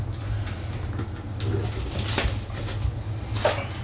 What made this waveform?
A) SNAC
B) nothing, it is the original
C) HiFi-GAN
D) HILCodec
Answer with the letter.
B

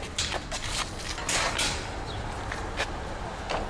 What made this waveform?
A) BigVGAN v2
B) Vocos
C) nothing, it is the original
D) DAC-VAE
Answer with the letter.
C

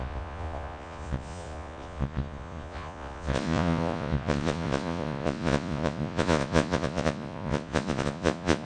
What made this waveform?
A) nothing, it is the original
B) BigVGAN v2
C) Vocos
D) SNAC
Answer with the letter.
C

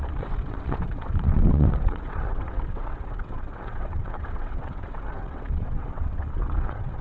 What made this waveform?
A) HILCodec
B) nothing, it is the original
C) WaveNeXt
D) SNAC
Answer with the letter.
C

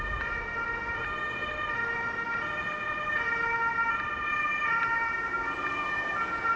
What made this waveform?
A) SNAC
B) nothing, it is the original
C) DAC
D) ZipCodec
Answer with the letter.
B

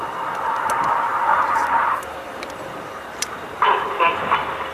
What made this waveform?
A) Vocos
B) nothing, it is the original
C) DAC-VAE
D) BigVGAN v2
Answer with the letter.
D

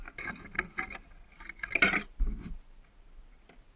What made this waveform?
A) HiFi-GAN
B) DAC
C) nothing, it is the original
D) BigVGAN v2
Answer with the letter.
C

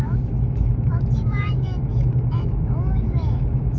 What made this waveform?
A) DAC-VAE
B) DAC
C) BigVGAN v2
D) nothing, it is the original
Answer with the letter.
A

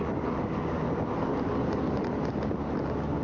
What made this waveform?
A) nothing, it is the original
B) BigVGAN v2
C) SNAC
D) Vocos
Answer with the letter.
A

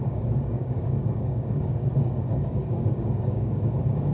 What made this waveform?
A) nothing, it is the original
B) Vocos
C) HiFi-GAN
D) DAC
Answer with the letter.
D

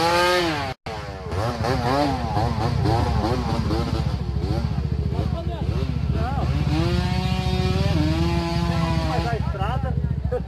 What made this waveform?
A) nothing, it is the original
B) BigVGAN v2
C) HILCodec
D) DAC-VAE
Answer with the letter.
A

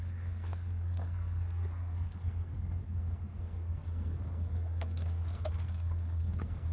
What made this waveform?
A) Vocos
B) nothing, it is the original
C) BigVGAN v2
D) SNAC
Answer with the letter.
D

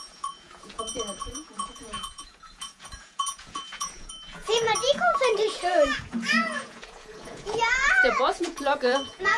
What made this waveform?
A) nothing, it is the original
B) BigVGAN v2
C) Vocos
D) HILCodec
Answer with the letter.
C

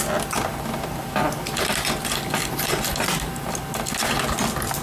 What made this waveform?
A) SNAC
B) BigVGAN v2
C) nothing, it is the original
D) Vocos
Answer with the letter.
C